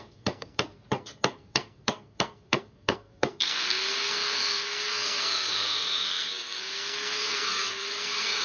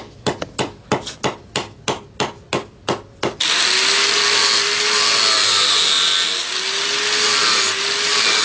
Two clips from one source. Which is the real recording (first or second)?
second